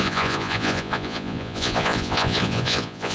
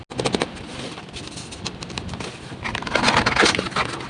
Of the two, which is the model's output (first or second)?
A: first